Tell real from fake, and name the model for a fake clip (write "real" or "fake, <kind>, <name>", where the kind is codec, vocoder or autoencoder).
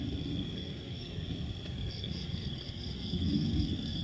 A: fake, codec, SNAC